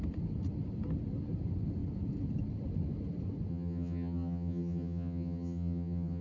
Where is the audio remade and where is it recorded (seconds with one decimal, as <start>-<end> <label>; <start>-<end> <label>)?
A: 0.0-3.5 recorded; 3.5-6.2 remade